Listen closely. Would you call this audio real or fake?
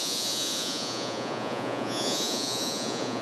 fake